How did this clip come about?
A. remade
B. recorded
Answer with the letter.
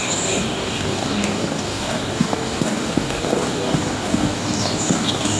A